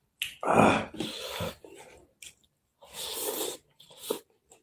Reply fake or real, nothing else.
real